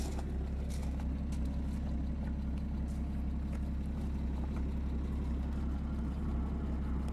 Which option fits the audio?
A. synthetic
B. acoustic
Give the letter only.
B